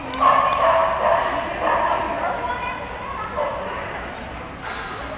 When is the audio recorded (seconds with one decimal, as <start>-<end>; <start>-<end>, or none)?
0.0-5.2